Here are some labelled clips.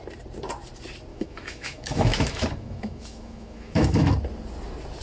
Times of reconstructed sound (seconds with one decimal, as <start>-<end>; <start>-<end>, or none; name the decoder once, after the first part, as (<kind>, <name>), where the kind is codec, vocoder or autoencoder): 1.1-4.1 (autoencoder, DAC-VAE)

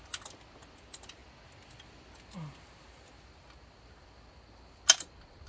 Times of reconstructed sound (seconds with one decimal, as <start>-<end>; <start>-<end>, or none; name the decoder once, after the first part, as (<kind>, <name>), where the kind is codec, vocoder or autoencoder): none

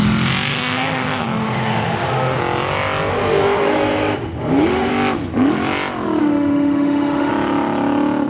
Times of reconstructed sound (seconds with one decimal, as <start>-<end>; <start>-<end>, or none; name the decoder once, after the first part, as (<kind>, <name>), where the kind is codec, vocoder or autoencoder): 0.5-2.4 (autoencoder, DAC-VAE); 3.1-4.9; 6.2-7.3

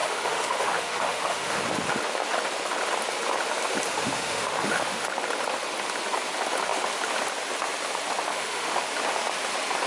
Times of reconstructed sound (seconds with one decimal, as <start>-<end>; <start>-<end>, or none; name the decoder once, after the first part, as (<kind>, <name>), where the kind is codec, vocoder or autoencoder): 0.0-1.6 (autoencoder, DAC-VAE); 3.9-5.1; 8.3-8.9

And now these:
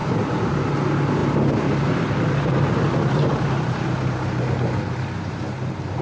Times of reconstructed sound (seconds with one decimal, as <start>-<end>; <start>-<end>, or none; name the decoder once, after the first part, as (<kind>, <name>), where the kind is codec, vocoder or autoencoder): none

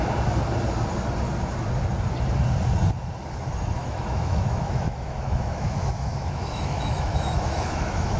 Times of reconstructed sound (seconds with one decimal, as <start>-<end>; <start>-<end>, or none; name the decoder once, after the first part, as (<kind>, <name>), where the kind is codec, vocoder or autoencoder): 3.8-8.2 (autoencoder, DAC-VAE)

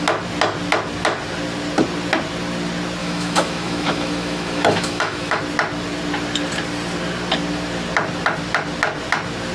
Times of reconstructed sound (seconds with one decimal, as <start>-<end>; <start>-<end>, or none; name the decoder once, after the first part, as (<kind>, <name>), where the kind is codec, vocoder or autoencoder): 3.0-5.4 (autoencoder, DAC-VAE)

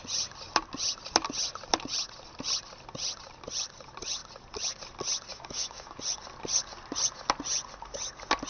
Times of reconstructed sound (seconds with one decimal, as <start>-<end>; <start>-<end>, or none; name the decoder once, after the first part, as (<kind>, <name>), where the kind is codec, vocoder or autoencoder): 5.3-6.0 (autoencoder, DAC-VAE)